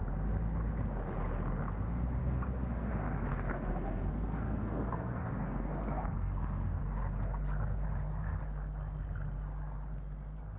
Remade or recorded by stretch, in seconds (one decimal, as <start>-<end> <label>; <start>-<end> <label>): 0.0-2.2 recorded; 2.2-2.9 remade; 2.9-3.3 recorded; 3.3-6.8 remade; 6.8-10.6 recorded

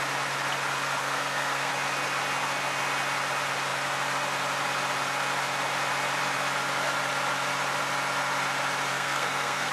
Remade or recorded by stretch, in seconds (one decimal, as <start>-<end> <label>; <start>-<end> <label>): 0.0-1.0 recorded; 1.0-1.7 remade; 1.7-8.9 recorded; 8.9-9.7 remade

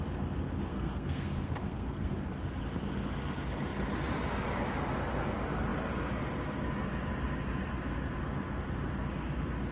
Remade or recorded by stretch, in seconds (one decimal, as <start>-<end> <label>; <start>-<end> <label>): 0.0-0.7 recorded; 0.7-2.1 remade; 2.1-9.7 recorded